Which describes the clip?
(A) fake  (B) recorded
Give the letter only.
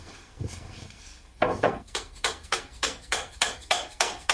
A